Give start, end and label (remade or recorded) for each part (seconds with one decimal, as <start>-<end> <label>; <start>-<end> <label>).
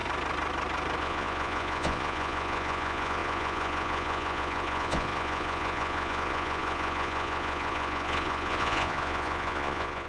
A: 0.0-1.0 recorded; 1.0-10.1 remade